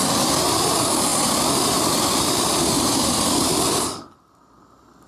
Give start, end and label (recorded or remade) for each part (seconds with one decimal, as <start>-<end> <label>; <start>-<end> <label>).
0.0-5.1 recorded